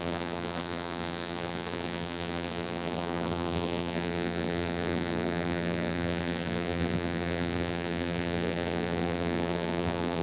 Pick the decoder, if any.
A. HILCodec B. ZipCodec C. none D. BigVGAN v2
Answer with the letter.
D